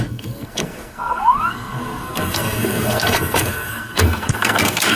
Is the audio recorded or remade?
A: remade